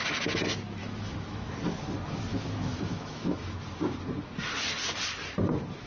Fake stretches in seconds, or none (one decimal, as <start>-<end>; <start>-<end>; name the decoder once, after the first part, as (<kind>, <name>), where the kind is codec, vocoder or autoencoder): 0.8-1.5 (autoencoder, DAC-VAE); 2.3-3.6